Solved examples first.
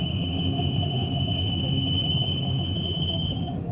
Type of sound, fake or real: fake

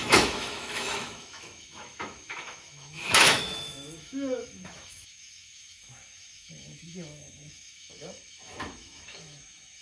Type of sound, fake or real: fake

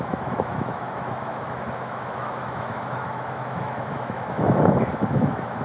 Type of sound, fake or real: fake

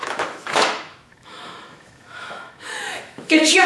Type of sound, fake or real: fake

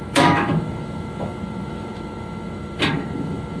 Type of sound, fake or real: fake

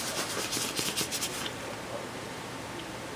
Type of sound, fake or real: real